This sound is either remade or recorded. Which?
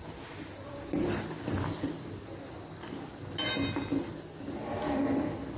recorded